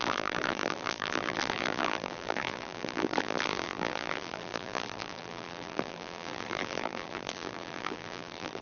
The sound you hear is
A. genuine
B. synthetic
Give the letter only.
B